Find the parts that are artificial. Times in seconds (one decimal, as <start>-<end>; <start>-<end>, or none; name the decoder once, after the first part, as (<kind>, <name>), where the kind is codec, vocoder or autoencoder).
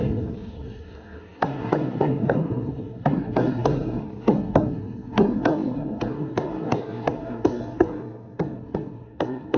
0.0-9.6 (codec, SNAC)